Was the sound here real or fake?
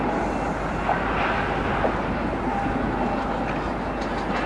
real